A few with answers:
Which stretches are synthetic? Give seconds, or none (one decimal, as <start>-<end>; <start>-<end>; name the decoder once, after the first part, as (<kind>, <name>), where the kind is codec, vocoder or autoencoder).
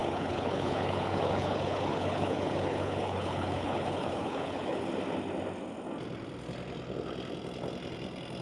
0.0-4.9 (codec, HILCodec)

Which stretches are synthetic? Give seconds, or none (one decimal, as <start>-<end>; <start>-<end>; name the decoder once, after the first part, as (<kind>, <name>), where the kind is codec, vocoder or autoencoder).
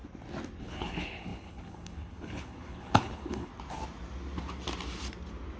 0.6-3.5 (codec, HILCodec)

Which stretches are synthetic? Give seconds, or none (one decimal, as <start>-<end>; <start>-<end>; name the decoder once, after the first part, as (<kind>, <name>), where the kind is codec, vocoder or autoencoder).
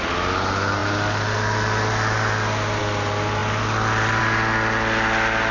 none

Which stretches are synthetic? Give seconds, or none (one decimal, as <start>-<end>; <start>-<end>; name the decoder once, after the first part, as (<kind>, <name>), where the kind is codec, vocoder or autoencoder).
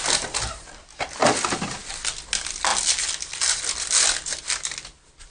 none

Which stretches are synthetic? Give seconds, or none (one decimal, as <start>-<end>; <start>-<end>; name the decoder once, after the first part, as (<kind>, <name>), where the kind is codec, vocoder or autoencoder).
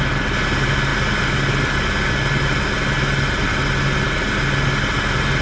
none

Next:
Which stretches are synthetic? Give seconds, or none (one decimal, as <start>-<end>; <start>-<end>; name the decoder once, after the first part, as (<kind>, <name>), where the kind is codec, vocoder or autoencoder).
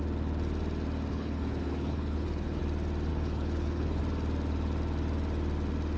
1.1-2.6 (codec, HILCodec); 3.1-4.0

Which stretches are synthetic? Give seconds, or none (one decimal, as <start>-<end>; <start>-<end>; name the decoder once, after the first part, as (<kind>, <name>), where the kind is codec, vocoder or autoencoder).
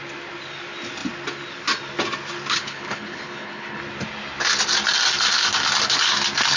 2.5-3.8 (codec, HILCodec)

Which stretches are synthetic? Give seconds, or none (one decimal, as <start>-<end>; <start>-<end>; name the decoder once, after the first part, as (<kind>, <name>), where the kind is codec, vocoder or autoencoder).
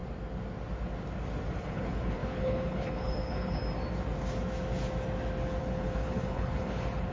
1.6-3.6 (codec, HILCodec); 5.6-7.1